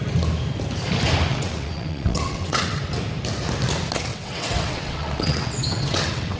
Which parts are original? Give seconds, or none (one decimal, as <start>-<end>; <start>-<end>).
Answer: 0.0-1.3; 2.8-4.1